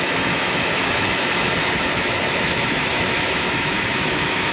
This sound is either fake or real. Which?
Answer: fake